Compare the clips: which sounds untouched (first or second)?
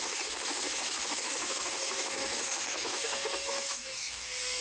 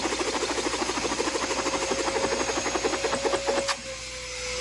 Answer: second